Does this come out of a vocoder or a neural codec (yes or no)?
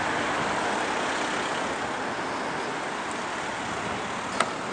no